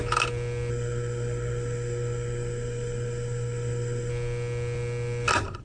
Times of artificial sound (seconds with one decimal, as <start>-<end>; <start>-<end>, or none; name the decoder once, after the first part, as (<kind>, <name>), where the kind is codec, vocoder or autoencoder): 0.7-4.1 (codec, SNAC)